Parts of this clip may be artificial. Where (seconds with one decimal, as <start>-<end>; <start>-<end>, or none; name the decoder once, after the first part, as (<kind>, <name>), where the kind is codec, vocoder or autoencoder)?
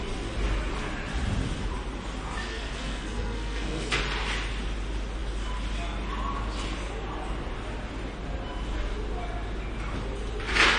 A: 2.5-4.0 (codec, SNAC)